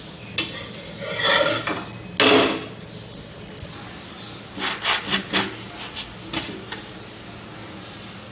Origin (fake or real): real